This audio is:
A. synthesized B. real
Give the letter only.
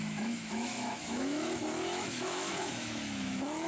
A